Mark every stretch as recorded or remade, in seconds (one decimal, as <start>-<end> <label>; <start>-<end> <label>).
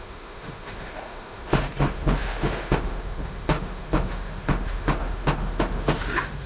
0.0-6.5 remade